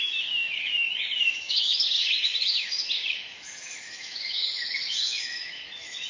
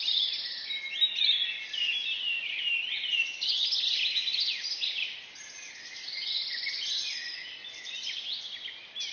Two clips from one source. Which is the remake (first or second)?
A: first